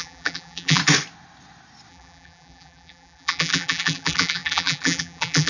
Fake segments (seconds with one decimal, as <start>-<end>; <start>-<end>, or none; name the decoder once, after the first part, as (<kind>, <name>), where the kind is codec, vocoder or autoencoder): 0.0-0.8 (vocoder, BigVGAN v2); 1.9-5.5